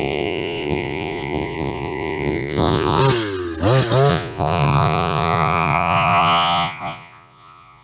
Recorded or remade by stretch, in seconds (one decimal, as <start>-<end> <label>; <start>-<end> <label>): 0.0-3.0 remade; 3.0-4.1 recorded; 4.1-7.8 remade